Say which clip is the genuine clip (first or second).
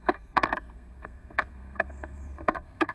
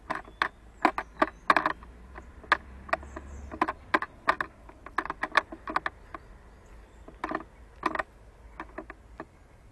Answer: second